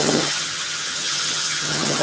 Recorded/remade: remade